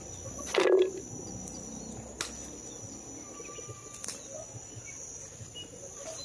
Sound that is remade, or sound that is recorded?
recorded